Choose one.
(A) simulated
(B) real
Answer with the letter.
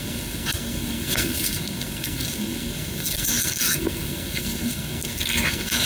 A